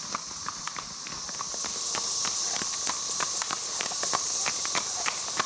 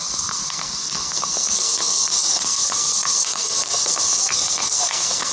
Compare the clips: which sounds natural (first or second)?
first